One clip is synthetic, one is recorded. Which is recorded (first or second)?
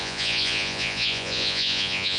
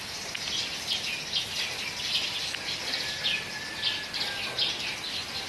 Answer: second